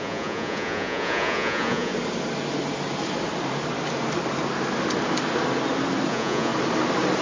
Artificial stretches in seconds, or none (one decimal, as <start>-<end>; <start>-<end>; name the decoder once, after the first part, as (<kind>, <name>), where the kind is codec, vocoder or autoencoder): 0.0-1.9 (vocoder, Vocos); 6.1-6.5